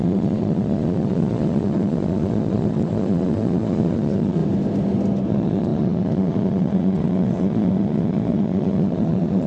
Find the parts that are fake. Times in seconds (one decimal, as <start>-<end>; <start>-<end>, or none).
0.0-4.4; 5.3-9.5